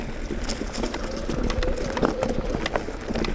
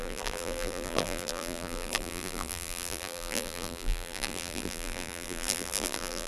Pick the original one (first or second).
first